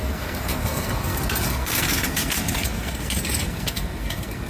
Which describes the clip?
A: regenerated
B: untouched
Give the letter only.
A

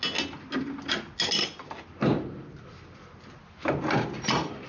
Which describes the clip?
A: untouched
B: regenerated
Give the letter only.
A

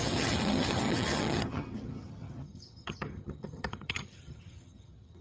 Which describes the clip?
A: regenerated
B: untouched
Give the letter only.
A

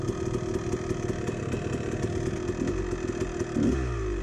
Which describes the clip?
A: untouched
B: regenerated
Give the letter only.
A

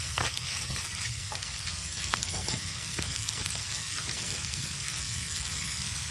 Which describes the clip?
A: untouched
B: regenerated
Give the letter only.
B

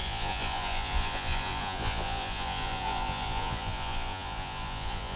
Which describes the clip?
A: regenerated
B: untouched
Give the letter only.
A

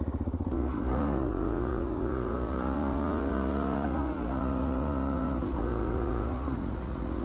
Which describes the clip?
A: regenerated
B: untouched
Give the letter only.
A